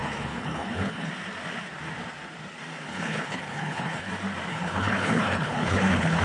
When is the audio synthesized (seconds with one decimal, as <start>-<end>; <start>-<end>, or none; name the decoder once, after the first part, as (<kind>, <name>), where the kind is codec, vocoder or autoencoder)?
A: 0.0-1.1 (codec, HILCodec); 2.9-4.1; 4.5-6.2